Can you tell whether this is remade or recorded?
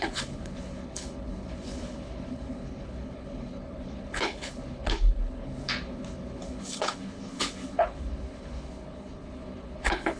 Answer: remade